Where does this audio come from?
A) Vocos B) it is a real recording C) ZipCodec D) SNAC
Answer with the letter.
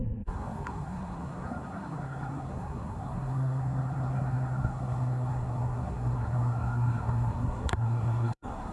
D